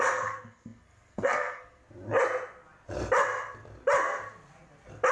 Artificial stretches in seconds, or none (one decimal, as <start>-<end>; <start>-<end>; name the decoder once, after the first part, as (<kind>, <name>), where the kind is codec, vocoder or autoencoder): 0.0-1.8 (codec, SNAC)

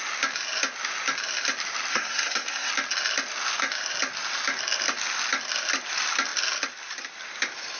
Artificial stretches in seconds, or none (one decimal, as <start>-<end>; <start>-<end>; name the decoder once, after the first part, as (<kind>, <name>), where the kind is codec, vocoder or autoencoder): 1.9-2.7 (codec, SNAC)

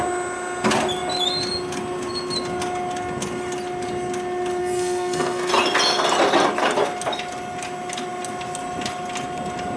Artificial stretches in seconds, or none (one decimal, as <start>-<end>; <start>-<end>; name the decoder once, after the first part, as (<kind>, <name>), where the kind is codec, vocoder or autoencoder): 4.6-5.5 (codec, SNAC)

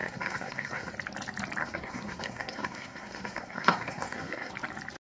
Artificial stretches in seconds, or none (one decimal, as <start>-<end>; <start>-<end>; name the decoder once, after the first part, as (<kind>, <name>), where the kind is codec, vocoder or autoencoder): 0.0-0.9 (codec, SNAC); 1.6-4.5

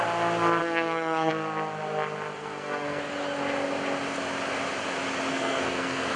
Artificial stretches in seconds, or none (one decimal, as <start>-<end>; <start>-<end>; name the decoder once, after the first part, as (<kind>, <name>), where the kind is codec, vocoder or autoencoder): 0.6-1.3 (codec, SNAC); 2.4-3.0; 5.3-6.2

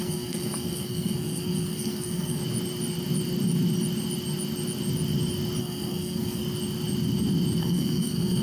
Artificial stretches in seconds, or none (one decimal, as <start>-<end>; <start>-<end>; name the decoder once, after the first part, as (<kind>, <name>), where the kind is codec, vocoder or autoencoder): 0.0-2.4 (codec, SNAC); 5.6-6.4; 7.6-8.4